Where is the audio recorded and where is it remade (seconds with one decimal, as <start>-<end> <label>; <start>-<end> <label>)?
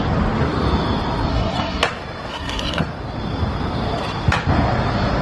0.0-1.3 recorded; 1.3-1.8 remade; 1.8-2.3 recorded; 2.3-2.8 remade; 2.8-5.2 recorded